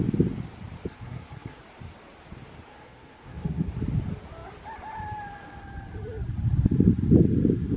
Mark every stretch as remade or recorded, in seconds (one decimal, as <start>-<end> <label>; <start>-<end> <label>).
0.0-0.9 recorded; 0.9-1.6 remade; 1.6-2.7 recorded; 2.7-3.7 remade; 3.7-7.8 recorded